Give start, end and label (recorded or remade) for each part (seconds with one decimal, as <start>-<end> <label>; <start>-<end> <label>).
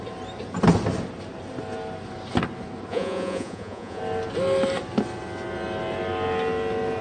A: 0.0-2.9 recorded; 2.9-4.0 remade; 4.0-7.0 recorded